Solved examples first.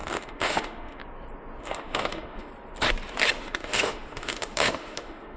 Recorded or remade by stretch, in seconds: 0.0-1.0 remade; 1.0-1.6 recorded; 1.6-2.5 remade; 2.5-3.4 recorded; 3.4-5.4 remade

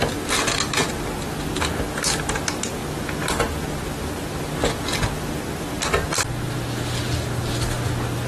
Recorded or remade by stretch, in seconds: 0.0-8.3 recorded

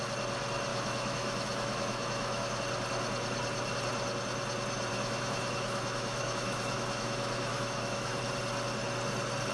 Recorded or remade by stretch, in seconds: 0.0-0.7 recorded; 0.7-2.6 remade; 2.6-4.9 recorded; 4.9-8.2 remade; 8.2-9.5 recorded

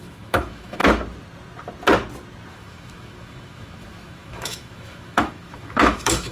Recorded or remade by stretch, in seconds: 0.0-0.8 remade; 0.8-2.5 recorded; 2.5-6.3 remade

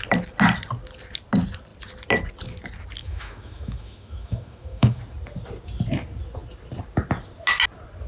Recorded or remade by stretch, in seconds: 0.0-3.0 recorded; 3.0-5.0 remade; 5.0-8.1 recorded